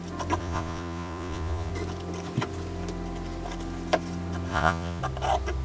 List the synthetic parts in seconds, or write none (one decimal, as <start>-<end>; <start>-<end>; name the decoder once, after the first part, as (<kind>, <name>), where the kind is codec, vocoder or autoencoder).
0.4-1.7 (vocoder, Vocos); 4.5-5.0